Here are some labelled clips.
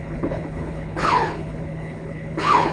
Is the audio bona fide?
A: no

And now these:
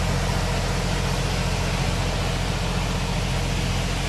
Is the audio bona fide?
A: yes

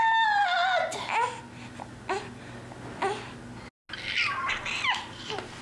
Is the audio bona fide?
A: yes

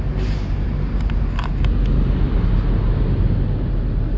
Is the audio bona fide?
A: yes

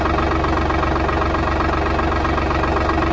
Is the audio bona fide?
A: yes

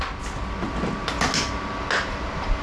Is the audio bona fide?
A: yes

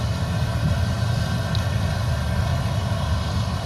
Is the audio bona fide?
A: yes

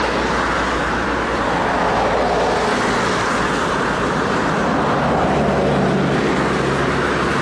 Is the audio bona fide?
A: yes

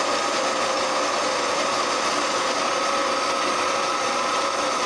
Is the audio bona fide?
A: yes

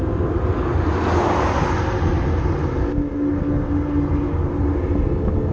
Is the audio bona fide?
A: yes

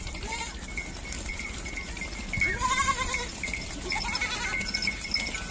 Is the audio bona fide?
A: yes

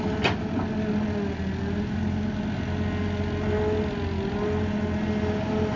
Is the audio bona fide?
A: yes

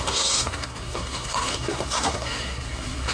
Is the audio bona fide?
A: no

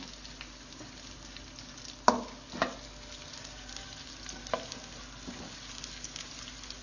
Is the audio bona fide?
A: yes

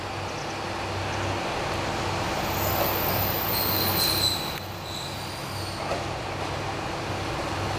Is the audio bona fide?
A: yes